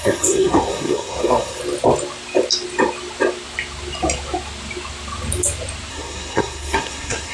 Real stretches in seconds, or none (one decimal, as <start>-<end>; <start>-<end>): 1.6-5.9